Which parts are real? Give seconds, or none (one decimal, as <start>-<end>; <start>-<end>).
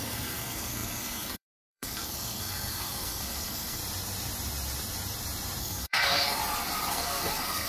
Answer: 3.8-5.6; 6.4-6.9